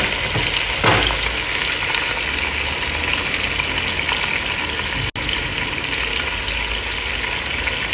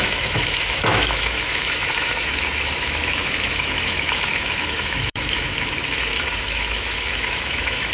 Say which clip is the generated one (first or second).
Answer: second